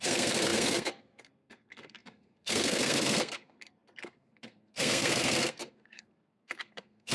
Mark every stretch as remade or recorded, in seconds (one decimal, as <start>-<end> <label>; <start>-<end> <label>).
0.0-7.1 remade